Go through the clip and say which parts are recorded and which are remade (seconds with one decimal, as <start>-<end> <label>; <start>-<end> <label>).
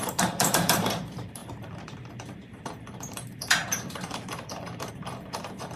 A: 0.0-5.8 remade